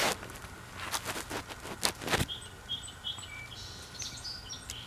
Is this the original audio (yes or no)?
yes